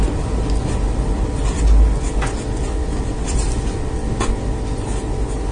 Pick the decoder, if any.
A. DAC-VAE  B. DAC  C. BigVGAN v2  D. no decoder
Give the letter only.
D